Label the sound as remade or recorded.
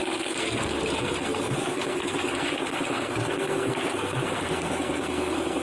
remade